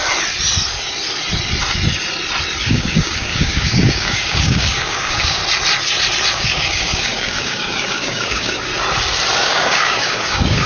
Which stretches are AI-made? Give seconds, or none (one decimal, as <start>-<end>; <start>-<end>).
2.6-5.4; 6.3-8.7; 9.4-10.7